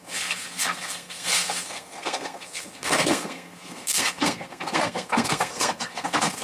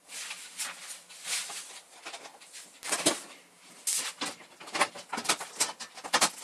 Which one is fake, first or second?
first